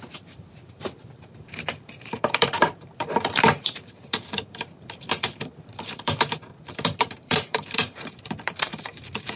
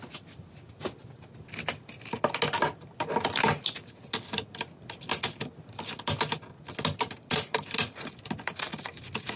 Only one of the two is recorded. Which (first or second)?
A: second